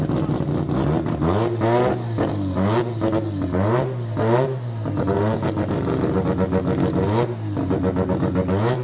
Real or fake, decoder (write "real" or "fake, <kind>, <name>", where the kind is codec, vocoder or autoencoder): real